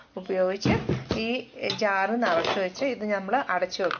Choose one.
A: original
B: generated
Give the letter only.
A